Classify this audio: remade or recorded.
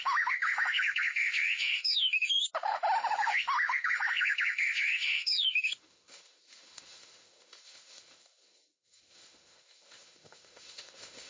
remade